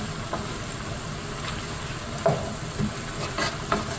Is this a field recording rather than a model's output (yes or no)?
yes